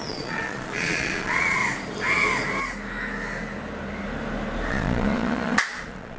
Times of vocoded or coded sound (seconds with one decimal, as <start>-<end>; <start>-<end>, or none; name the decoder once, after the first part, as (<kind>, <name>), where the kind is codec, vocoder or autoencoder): 0.0-1.6 (vocoder, Vocos); 4.7-6.2